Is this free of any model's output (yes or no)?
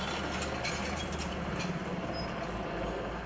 yes